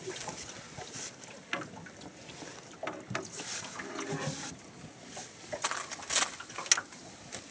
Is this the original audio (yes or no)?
yes